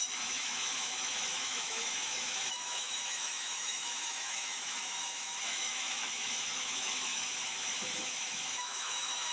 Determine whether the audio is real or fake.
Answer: fake